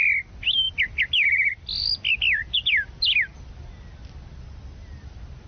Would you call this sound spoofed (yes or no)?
no